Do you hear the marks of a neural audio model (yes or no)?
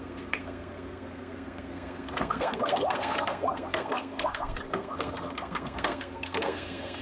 yes